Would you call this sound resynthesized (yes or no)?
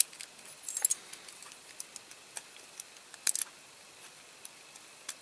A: no